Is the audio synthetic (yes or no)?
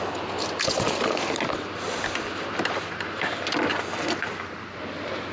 no